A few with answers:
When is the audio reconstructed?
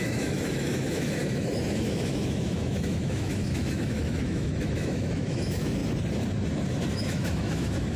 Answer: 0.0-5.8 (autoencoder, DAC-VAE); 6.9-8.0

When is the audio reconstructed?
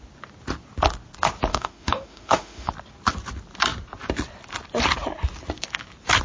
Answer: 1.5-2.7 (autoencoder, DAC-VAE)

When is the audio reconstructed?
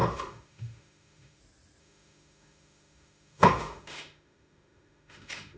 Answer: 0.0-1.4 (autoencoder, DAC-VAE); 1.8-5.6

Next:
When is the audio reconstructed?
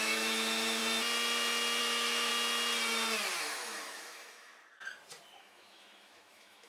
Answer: 0.0-0.8 (autoencoder, DAC-VAE); 1.8-2.3; 3.4-4.5; 5.4-6.7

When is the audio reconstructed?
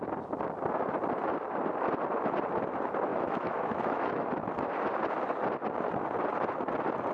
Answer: 3.1-4.3 (autoencoder, DAC-VAE)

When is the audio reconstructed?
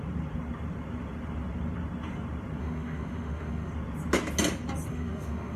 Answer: 2.6-3.7 (autoencoder, DAC-VAE); 4.9-5.6